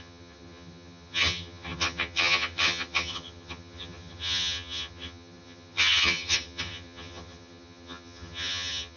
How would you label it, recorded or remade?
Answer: remade